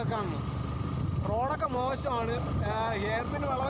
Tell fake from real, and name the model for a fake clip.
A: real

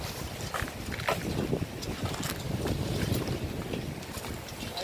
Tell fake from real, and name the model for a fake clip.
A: real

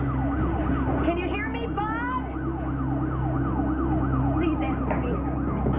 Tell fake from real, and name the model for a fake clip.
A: real